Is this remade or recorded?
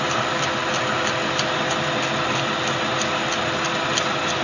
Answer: recorded